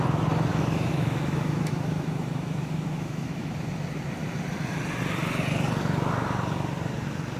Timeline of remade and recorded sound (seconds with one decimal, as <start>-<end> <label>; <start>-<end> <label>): 0.0-0.5 recorded; 0.5-3.5 remade; 3.5-7.4 recorded